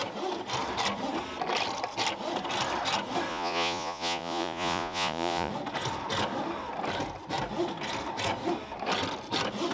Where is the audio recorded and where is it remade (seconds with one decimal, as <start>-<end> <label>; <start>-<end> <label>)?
0.0-3.3 recorded; 3.3-5.5 remade; 5.5-9.7 recorded

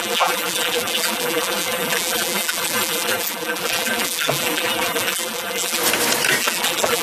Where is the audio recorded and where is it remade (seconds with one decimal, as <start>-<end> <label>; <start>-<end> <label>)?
0.0-5.8 remade; 5.8-6.4 recorded; 6.4-7.0 remade

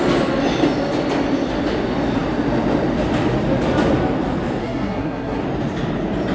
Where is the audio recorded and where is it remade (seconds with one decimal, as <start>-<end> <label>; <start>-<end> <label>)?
0.0-4.6 recorded; 4.6-5.4 remade; 5.4-6.3 recorded

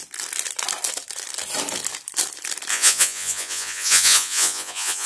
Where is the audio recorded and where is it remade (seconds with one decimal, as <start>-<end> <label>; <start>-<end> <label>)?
0.0-2.7 recorded; 2.7-5.1 remade

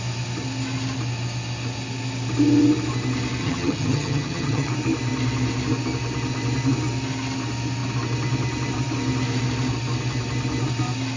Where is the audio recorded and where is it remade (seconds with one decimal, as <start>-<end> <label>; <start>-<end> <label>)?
0.0-3.4 recorded; 3.4-4.7 remade; 4.7-11.2 recorded

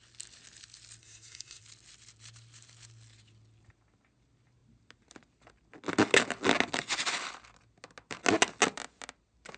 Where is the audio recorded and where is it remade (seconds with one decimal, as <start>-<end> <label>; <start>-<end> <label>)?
0.0-1.0 recorded; 1.0-1.6 remade; 1.6-9.6 recorded

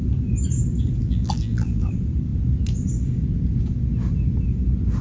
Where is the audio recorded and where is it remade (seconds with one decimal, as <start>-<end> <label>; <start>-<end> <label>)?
0.0-1.0 recorded; 1.0-1.9 remade; 1.9-5.0 recorded